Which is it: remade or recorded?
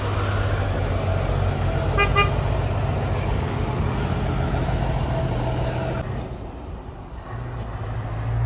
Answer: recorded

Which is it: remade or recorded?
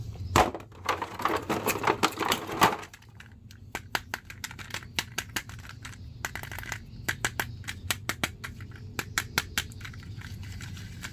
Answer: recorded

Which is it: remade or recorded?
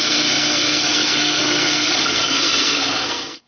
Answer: remade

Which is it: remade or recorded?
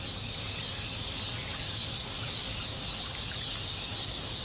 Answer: recorded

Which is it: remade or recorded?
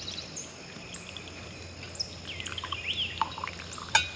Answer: recorded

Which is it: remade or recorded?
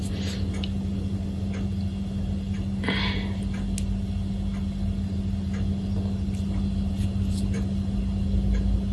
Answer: recorded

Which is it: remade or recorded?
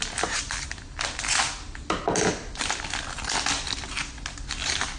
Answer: recorded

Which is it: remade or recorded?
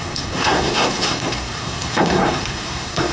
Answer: remade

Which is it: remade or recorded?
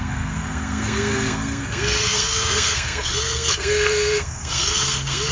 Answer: remade